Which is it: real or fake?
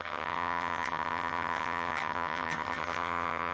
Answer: fake